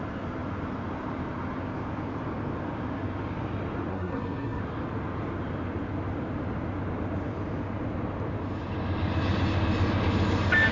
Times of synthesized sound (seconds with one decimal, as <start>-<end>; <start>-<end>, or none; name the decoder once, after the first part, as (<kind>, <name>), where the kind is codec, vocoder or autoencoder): 3.9-4.6 (codec, SNAC)